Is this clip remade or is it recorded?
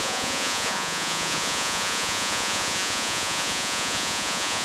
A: remade